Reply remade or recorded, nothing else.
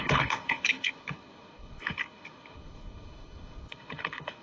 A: remade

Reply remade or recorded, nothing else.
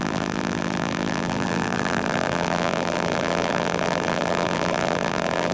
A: remade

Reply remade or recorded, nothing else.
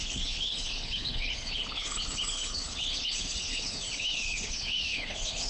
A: remade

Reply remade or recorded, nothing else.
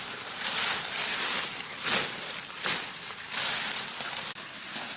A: recorded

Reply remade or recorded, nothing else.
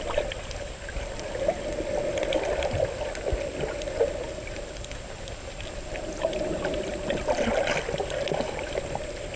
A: recorded